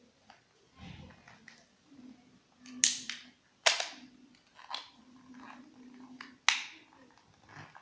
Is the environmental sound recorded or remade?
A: recorded